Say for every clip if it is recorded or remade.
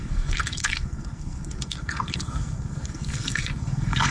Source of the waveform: remade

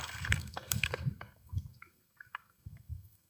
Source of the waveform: remade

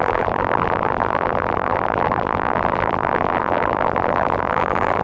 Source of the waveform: remade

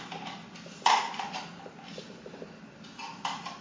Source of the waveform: recorded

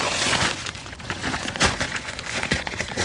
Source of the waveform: remade